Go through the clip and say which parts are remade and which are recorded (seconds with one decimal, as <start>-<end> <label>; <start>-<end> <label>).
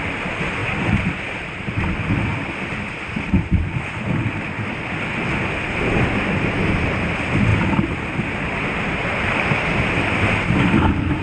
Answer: 0.0-11.2 recorded